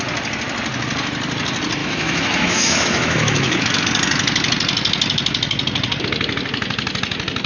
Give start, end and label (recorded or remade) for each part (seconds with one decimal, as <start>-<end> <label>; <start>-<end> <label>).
0.0-1.8 recorded; 1.8-3.8 remade; 3.8-7.5 recorded